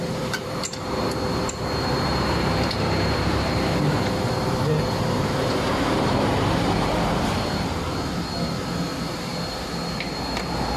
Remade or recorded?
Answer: remade